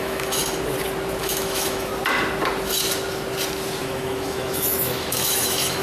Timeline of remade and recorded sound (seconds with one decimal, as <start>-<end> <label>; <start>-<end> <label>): 0.0-0.4 remade; 0.4-1.2 recorded; 1.2-1.9 remade; 1.9-3.8 recorded; 3.8-5.8 remade